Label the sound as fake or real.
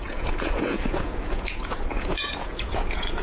fake